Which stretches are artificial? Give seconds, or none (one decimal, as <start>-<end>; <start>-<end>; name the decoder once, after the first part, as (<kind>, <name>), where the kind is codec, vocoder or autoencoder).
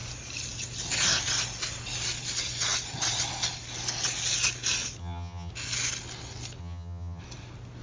5.0-5.5 (vocoder, HiFi-GAN); 6.6-7.2